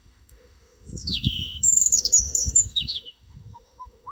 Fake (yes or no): yes